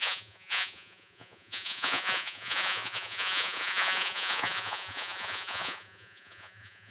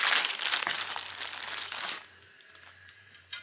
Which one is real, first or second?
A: second